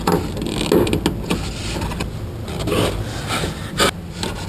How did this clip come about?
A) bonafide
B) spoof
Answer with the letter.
A